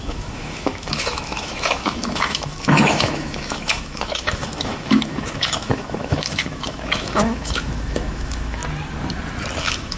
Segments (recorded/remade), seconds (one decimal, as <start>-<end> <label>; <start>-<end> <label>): 0.0-8.6 remade; 8.6-9.6 recorded; 9.6-10.0 remade